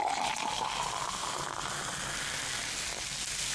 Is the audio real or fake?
real